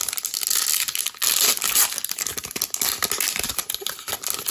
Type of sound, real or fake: real